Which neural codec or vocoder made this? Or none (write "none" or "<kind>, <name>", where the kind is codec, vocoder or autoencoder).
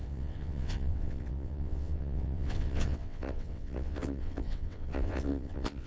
vocoder, WaveNeXt